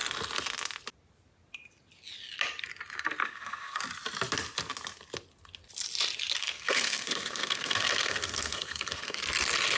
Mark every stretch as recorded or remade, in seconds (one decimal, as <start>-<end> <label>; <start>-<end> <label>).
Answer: 0.0-3.2 recorded; 3.2-3.8 remade; 3.8-6.4 recorded; 6.4-9.2 remade; 9.2-9.8 recorded

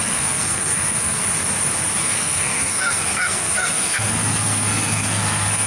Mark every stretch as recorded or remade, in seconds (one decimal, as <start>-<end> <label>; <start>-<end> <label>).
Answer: 0.0-1.2 remade; 1.2-2.0 recorded; 2.0-5.7 remade